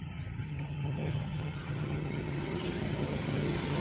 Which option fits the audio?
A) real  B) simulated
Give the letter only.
B